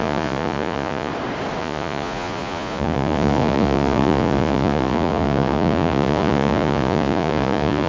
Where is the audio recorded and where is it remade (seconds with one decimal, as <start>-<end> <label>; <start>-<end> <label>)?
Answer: 0.0-1.1 remade; 1.1-1.6 recorded; 1.6-7.9 remade